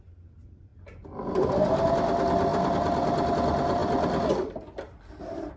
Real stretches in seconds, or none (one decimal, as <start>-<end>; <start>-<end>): 0.0-5.6